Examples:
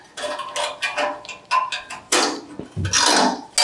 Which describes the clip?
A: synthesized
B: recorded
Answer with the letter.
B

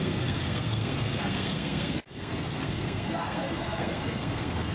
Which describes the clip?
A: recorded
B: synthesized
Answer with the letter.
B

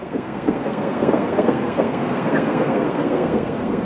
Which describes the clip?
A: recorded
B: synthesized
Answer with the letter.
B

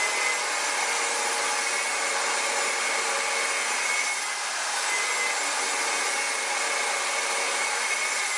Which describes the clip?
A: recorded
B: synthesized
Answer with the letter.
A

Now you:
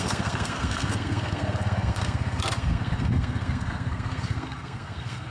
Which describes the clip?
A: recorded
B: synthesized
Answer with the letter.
B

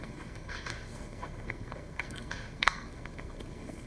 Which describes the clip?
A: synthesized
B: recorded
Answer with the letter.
A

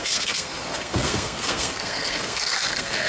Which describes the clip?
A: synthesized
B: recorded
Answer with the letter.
A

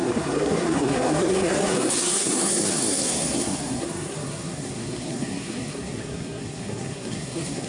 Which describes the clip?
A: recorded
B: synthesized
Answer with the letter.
B